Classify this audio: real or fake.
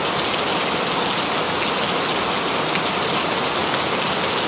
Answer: real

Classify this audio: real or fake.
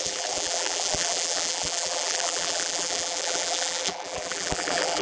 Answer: fake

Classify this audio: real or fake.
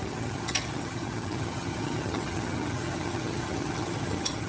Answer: fake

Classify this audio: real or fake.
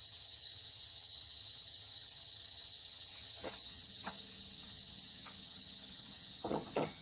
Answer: fake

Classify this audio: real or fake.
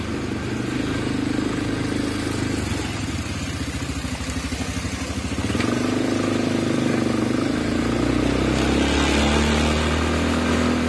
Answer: real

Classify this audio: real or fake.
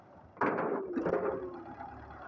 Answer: real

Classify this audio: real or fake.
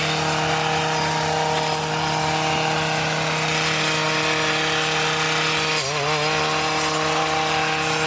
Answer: real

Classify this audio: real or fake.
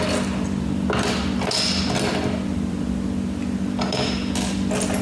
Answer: real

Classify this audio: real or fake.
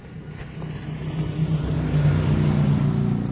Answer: real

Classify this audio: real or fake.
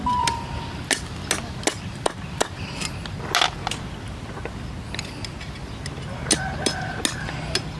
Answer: real